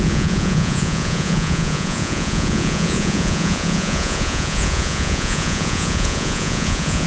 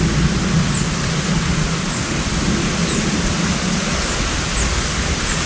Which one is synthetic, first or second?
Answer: first